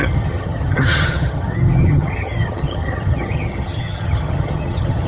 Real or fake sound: fake